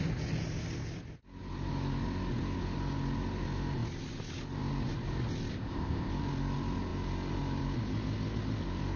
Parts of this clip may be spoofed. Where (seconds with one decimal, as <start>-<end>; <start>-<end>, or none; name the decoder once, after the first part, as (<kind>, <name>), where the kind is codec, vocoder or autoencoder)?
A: 5.5-6.1 (codec, ZipCodec)

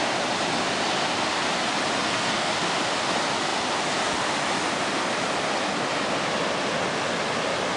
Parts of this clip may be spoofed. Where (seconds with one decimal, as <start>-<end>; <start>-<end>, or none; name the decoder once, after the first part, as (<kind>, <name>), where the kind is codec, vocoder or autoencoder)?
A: 2.0-2.5 (codec, SNAC)

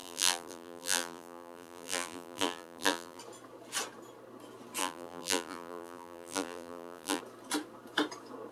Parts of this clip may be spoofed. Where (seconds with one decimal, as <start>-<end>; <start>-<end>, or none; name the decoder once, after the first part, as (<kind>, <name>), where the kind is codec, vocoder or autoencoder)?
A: 0.0-3.2 (vocoder, BigVGAN v2); 4.8-7.2

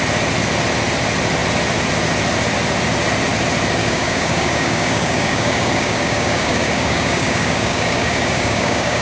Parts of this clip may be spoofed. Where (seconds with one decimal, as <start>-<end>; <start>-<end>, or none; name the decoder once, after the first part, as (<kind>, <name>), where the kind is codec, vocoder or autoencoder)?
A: 3.8-9.0 (codec, DAC)